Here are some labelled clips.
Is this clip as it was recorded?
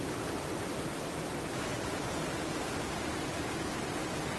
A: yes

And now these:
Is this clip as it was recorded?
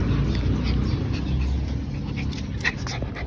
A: no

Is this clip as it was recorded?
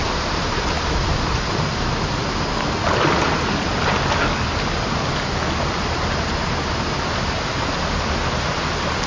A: yes